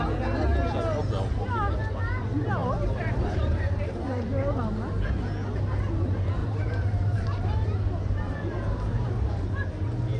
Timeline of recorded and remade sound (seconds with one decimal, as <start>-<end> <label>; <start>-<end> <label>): 0.0-2.6 recorded; 2.6-4.9 remade; 4.9-6.4 recorded; 6.4-10.2 remade